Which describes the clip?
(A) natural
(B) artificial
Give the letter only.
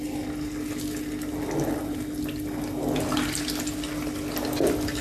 A